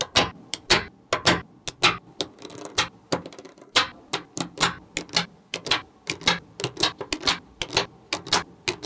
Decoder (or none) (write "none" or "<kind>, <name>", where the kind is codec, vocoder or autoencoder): none